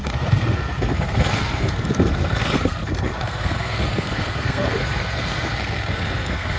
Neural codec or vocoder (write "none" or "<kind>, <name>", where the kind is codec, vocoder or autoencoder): codec, SNAC